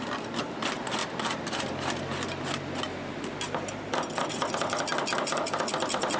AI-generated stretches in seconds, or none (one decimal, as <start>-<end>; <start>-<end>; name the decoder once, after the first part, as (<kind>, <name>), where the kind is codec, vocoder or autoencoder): none